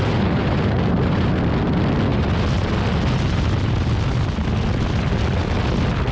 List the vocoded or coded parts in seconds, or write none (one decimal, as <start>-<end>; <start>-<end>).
0.4-1.3